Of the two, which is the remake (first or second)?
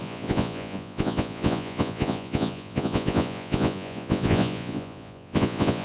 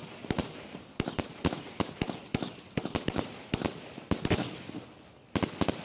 first